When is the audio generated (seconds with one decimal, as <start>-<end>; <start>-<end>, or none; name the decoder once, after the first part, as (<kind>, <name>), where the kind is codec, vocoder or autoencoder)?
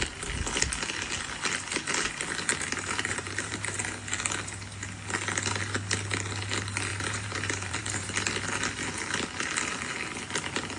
2.5-3.8 (vocoder, BigVGAN v2); 6.9-8.1